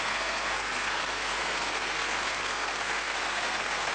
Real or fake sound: fake